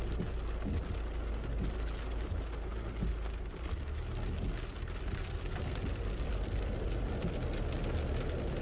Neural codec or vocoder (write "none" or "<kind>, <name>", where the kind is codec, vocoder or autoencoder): none